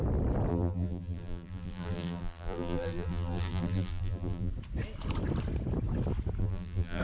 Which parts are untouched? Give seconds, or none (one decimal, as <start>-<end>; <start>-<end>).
0.0-0.5; 4.5-6.4